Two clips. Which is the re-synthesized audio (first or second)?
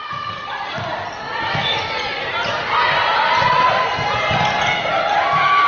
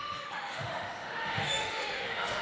second